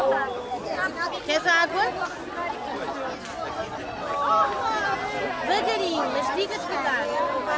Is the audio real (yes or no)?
yes